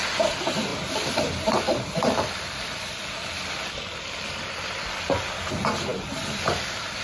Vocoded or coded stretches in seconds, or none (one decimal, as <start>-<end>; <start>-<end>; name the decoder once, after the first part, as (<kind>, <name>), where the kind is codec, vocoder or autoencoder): 0.0-7.0 (vocoder, BigVGAN v2)